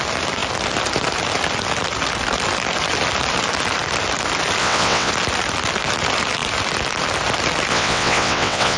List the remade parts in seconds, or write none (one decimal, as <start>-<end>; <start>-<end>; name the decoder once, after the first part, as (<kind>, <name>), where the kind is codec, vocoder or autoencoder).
4.6-5.1 (vocoder, WaveNeXt); 7.7-8.8